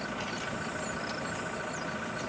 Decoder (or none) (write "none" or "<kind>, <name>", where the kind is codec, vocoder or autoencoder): none